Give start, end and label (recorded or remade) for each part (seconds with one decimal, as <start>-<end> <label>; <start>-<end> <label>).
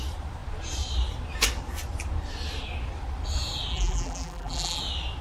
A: 0.0-3.7 recorded; 3.7-4.8 remade; 4.8-5.2 recorded